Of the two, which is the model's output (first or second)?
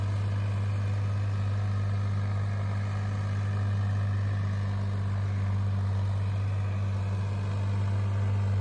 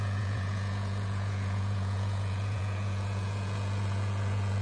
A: second